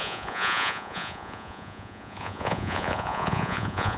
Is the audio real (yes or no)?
no